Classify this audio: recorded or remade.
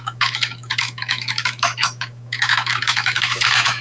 remade